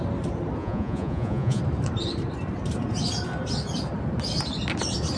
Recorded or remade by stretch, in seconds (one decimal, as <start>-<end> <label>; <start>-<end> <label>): 0.0-0.6 recorded; 0.6-1.6 remade; 1.6-5.2 recorded